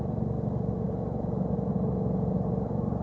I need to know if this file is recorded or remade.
recorded